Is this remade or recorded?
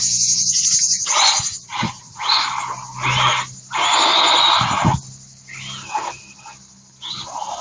recorded